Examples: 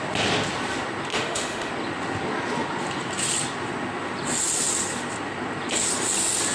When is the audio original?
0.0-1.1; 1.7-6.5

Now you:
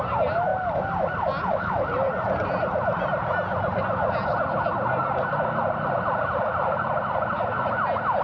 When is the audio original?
0.0-8.2

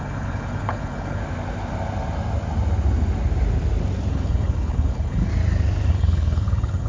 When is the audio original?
1.2-4.1; 5.3-5.9

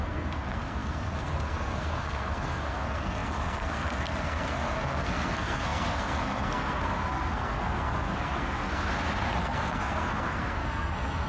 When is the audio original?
8.9-9.4

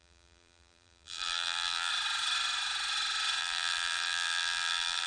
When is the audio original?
1.9-3.4